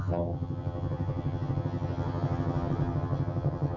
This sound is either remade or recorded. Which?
remade